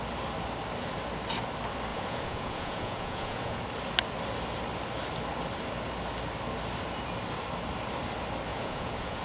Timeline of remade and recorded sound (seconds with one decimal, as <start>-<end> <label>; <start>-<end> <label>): 0.0-1.9 recorded; 1.9-3.6 remade; 3.6-8.5 recorded; 8.5-9.2 remade